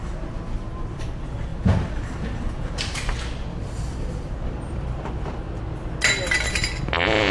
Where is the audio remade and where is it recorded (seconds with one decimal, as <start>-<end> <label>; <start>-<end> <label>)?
0.0-3.5 recorded; 3.5-5.6 remade; 5.6-7.3 recorded